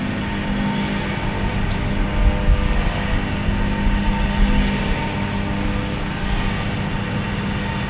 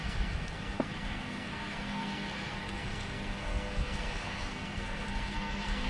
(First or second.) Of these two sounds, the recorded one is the first